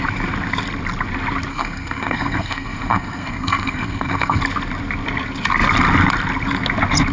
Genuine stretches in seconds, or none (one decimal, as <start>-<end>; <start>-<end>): 0.0-1.5; 4.4-7.1